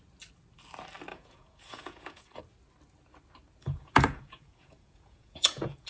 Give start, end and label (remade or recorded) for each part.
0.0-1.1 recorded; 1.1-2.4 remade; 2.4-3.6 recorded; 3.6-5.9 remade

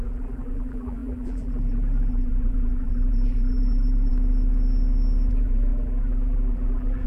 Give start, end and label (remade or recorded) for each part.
0.0-4.1 remade; 4.1-5.3 recorded; 5.3-7.1 remade

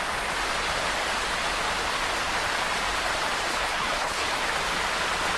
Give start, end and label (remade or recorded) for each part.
0.0-3.5 recorded; 3.5-4.3 remade; 4.3-5.4 recorded

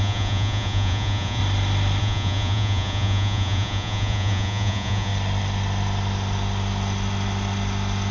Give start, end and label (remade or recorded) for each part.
0.0-1.4 remade; 1.4-2.0 recorded; 2.0-5.1 remade; 5.1-8.1 recorded

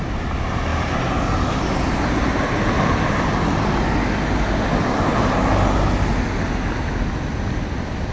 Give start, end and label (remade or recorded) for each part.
0.0-8.1 recorded